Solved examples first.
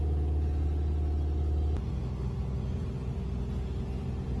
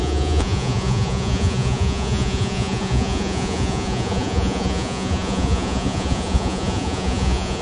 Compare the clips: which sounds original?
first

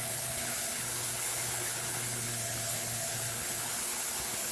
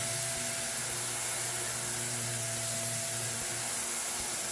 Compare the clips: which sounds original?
second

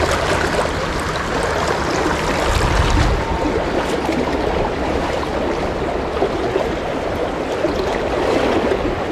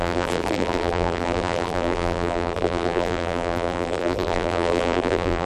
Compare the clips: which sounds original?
first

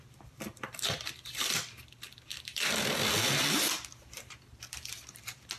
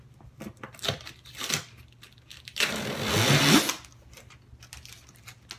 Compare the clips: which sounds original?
second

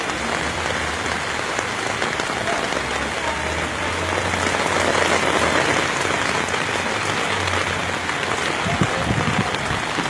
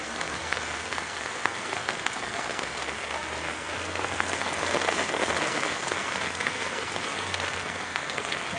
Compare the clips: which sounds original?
first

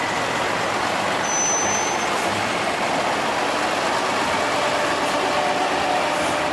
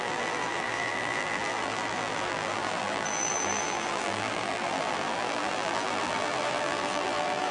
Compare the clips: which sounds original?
first